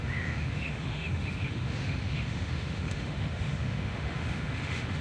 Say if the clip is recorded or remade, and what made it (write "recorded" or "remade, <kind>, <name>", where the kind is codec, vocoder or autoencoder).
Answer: remade, autoencoder, DAC-VAE